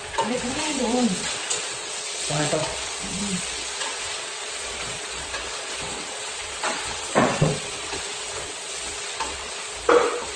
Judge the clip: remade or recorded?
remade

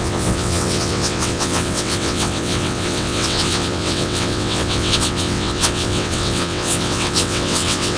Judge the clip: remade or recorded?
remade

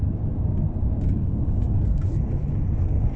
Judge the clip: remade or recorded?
recorded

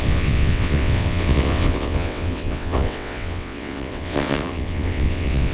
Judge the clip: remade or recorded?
remade